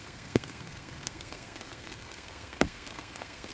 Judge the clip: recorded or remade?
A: remade